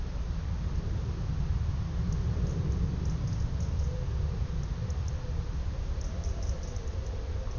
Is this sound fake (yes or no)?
no